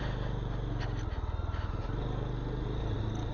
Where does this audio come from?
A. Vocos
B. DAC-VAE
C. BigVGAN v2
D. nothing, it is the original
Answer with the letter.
D